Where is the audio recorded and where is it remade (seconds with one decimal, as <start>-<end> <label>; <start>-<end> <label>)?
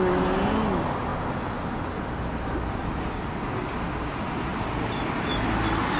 0.0-6.0 recorded